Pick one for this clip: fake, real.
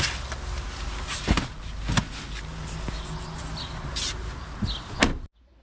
real